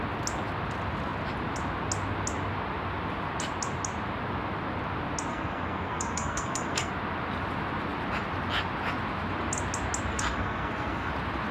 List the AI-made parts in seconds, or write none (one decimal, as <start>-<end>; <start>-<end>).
5.3-6.9; 10.1-11.1